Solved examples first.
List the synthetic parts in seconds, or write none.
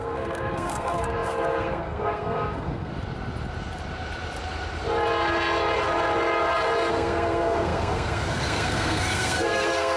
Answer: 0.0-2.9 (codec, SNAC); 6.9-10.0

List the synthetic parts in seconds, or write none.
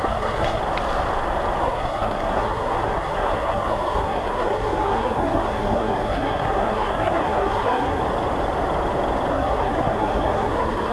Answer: 0.0-0.6 (codec, SNAC); 1.6-8.0; 9.3-10.9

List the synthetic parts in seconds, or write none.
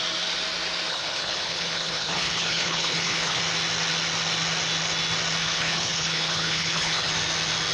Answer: 0.9-3.4 (codec, HILCodec); 5.4-7.1